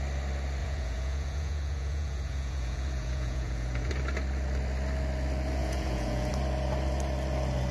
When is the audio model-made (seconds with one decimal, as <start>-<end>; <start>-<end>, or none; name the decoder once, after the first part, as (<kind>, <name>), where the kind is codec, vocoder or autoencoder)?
0.6-3.9 (vocoder, Vocos); 5.6-6.3